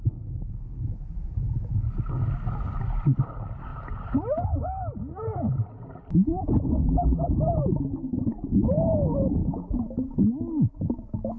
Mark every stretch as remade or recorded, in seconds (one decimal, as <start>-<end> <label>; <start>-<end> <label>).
0.0-6.8 recorded; 6.8-7.3 remade; 7.3-11.4 recorded